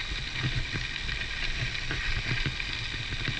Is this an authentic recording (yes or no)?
yes